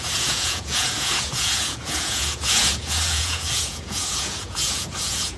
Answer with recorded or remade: remade